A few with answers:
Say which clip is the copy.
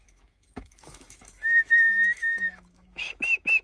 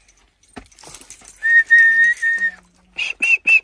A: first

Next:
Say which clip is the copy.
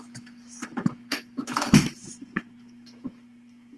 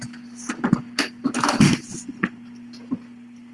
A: first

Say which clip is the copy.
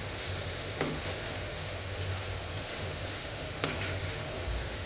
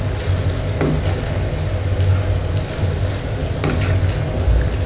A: first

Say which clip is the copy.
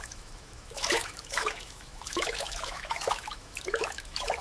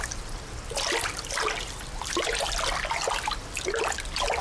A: first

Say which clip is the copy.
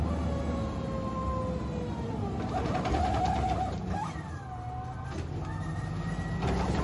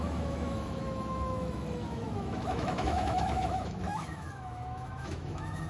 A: second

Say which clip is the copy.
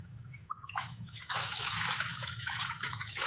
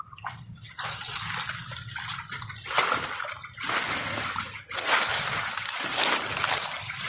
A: first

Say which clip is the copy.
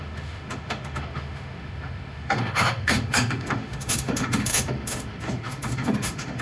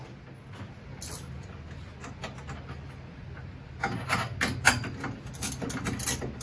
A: first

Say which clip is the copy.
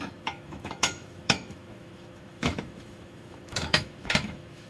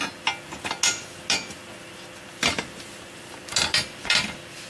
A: first